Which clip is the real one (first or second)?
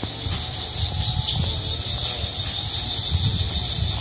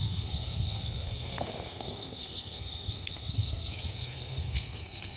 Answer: first